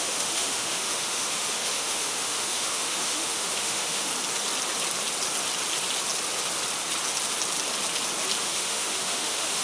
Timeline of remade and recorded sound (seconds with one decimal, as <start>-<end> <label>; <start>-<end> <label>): 0.0-4.1 remade; 4.1-8.4 recorded; 8.4-9.6 remade